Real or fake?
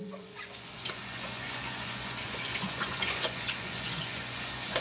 fake